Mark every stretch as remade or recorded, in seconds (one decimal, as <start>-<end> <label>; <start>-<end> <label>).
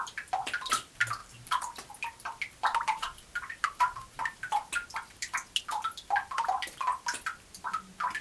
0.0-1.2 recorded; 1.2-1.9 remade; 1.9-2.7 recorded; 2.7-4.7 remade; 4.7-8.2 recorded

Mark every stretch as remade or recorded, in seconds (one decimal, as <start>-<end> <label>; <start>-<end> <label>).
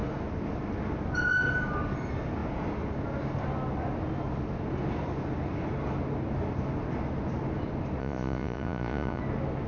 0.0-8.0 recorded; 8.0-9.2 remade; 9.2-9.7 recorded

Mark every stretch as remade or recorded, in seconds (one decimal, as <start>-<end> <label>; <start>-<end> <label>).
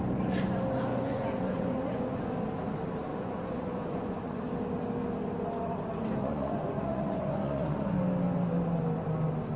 0.0-0.9 recorded; 0.9-2.3 remade; 2.3-3.1 recorded; 3.1-4.4 remade; 4.4-6.2 recorded; 6.2-8.0 remade; 8.0-9.6 recorded